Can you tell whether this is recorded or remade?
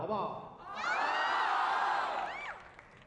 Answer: recorded